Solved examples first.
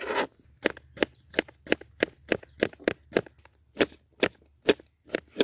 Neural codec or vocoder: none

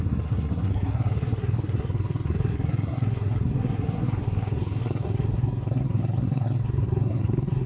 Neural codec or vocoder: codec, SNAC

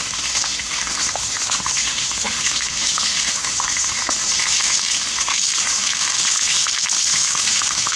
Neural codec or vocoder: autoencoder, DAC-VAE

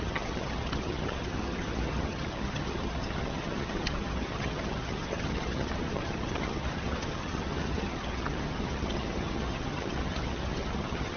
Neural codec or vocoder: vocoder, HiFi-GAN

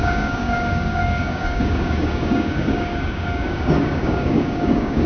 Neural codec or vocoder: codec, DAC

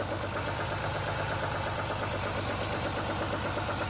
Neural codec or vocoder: none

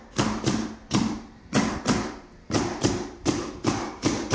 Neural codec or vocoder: vocoder, BigVGAN v2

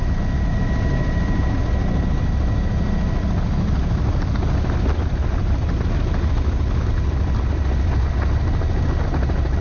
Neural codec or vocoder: none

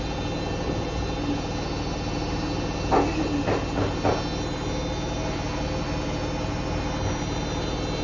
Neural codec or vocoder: none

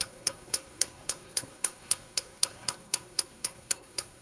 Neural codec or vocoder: codec, SNAC